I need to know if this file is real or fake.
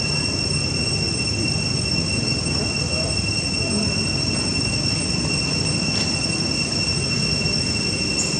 real